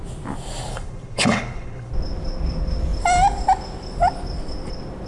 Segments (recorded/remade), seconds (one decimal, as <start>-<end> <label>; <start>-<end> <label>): 0.0-0.7 recorded; 0.7-1.9 remade; 1.9-5.1 recorded